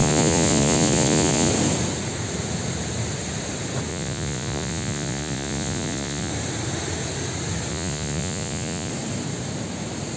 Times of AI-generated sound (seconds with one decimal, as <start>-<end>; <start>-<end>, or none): 0.0-1.5; 3.9-6.3; 7.7-8.9